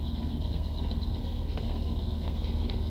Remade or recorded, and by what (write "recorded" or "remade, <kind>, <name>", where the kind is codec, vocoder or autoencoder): remade, codec, SNAC